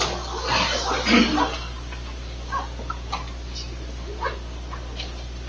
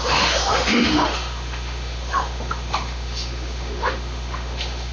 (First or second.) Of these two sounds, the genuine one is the first